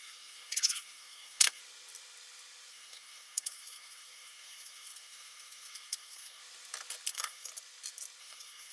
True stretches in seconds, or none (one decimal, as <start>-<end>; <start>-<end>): 1.6-2.7; 6.4-7.1; 7.5-8.2

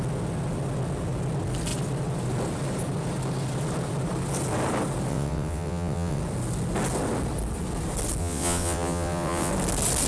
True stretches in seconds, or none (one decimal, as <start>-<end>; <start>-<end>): 0.0-5.1; 6.2-8.2; 9.5-10.1

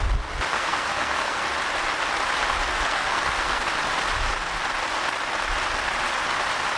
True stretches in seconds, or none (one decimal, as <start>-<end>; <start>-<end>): 0.0-0.5; 1.5-2.7; 3.7-6.8

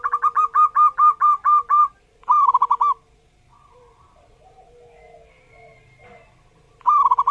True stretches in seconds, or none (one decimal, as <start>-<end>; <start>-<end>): 0.0-7.3

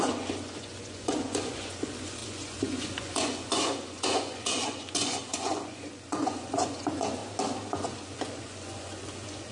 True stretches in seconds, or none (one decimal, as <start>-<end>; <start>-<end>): 7.2-7.7

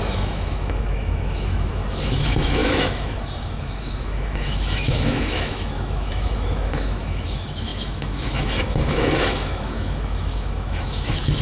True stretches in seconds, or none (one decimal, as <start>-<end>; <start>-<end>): none

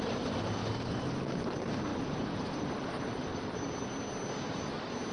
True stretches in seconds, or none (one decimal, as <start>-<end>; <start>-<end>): 0.0-0.6; 1.2-1.9; 3.3-5.1

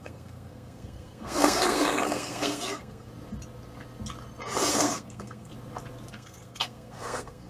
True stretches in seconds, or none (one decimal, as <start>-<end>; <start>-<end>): 3.1-4.7; 5.5-6.1